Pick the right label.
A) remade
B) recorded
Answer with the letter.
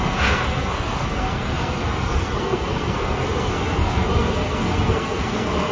A